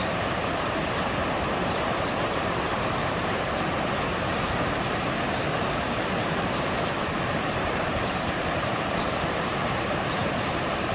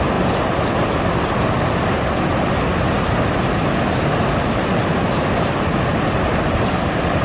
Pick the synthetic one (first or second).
first